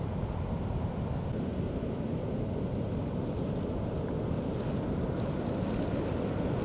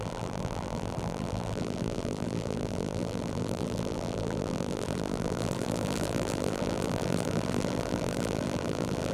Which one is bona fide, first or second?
first